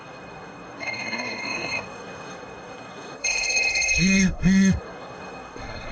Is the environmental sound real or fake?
fake